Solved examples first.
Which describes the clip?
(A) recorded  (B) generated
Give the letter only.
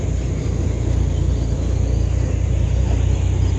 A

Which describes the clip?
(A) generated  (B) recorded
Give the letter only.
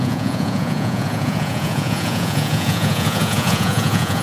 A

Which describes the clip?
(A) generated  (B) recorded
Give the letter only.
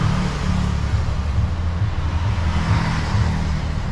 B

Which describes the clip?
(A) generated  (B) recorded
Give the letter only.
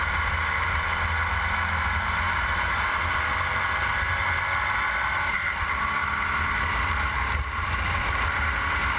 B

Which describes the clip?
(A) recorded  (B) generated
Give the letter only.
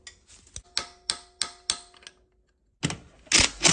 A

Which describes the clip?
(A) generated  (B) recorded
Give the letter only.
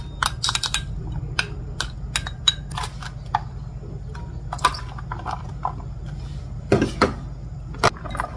B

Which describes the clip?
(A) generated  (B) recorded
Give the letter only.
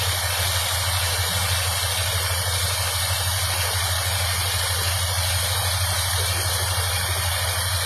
B